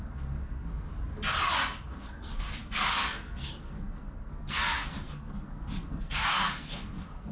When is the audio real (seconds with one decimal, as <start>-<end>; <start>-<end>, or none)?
0.9-1.9